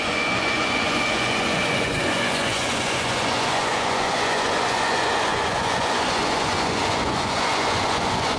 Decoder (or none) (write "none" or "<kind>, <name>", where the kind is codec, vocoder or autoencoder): vocoder, Vocos